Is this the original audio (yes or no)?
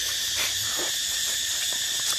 no